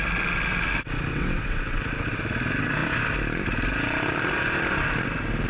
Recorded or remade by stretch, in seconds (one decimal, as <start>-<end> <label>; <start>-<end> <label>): 0.0-1.1 recorded; 1.1-1.8 remade; 1.8-5.5 recorded